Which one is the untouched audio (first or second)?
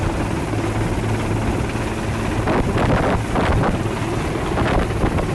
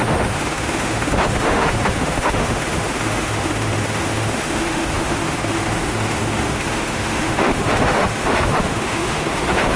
first